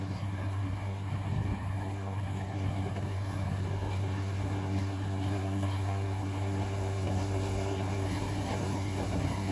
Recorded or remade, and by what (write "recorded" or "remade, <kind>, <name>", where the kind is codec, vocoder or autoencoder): remade, codec, SNAC